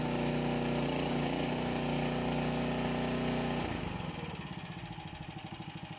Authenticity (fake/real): real